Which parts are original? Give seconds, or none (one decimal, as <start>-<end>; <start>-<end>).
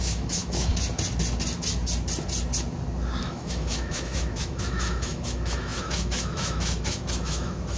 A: 0.7-3.2